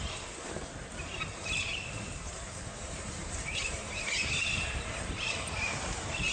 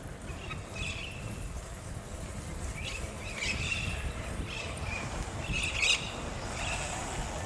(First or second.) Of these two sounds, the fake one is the first